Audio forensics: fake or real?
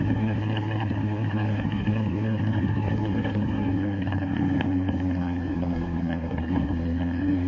fake